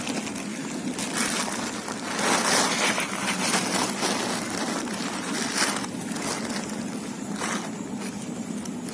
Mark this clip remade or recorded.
recorded